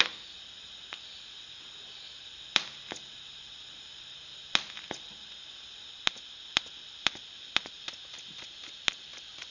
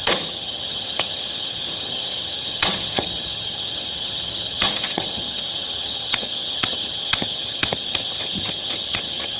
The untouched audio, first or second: first